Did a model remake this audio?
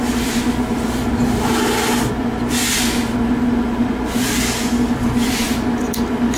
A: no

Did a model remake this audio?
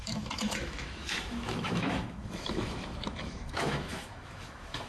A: yes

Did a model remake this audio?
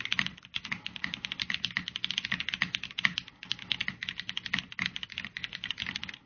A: no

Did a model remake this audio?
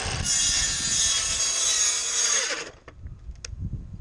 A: no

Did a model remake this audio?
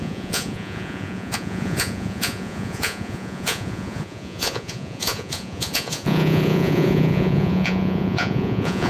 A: yes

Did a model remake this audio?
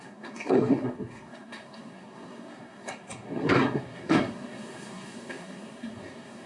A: yes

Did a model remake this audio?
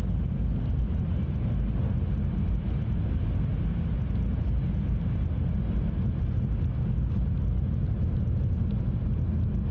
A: no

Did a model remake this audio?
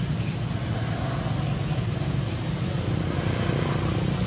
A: no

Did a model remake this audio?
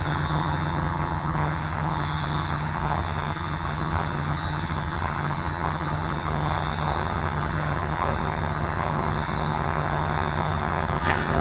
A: yes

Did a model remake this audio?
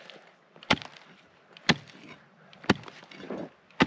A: no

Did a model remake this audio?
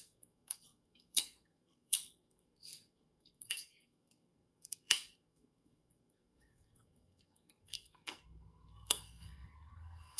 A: yes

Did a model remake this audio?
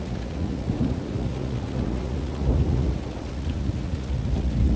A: yes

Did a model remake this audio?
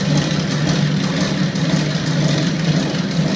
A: no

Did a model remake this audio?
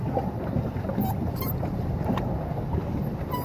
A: no